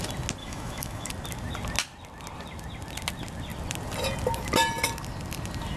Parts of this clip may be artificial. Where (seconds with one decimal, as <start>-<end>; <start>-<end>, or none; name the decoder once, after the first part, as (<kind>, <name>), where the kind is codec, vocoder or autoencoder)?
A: 0.4-1.1 (autoencoder, DAC-VAE)